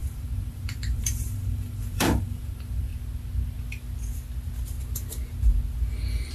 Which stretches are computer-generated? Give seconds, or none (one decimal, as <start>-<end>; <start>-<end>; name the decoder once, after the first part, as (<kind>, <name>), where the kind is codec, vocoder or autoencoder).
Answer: 0.0-2.9 (vocoder, BigVGAN v2)